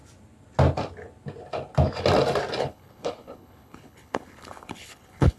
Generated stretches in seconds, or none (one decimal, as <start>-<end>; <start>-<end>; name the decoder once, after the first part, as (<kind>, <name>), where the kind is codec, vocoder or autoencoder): 2.6-5.4 (codec, HILCodec)